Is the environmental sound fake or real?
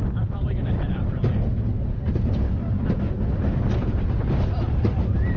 real